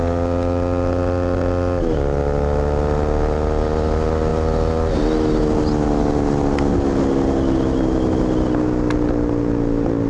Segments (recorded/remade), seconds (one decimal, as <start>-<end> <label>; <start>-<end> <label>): 0.0-10.1 recorded